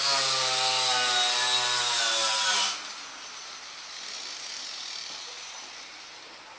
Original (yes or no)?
yes